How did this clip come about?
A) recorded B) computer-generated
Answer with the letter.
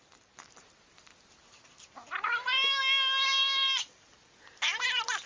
A